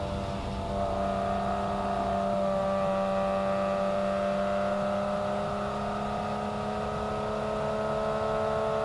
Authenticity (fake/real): real